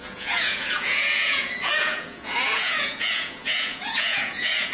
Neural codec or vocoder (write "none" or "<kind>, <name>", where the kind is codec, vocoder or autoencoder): vocoder, Vocos